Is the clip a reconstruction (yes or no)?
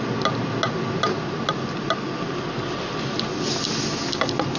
no